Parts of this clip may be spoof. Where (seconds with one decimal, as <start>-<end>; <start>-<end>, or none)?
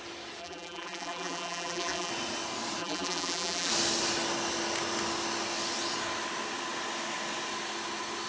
0.4-2.1; 2.8-3.7